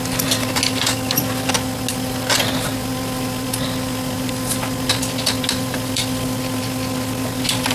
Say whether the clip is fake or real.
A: real